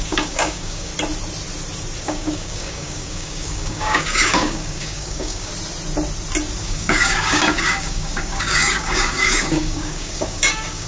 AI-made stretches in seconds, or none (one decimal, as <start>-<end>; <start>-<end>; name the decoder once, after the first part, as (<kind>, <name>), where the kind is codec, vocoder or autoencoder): 0.0-0.9 (codec, DAC); 2.0-5.5; 6.6-10.9